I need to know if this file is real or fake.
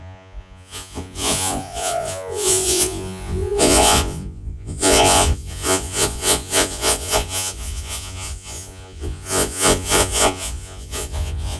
fake